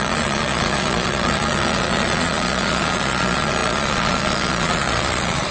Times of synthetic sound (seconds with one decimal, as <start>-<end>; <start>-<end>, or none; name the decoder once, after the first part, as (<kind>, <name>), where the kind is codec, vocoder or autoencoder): 0.0-5.5 (vocoder, Vocos)

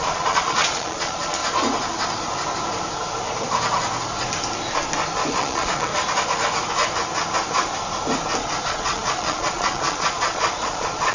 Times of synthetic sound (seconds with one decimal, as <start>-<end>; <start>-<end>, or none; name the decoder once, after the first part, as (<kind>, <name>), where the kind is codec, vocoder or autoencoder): 0.0-1.4 (vocoder, Vocos); 5.3-5.9; 8.6-11.1

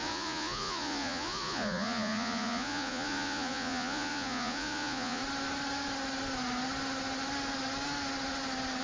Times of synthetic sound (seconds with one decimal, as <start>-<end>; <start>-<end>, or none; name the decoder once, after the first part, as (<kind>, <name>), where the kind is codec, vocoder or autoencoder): 0.0-5.2 (vocoder, Vocos)

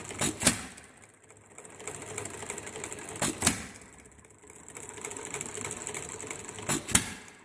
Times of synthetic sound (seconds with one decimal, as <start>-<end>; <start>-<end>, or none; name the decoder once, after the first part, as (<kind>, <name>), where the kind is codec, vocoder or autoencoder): none

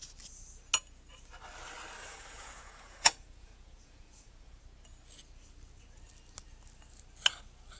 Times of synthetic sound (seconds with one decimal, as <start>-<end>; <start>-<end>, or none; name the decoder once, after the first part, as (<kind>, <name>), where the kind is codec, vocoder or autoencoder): 2.1-4.6 (vocoder, Vocos)